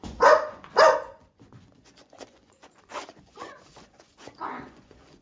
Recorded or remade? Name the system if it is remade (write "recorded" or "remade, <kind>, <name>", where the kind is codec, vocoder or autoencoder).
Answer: remade, vocoder, Vocos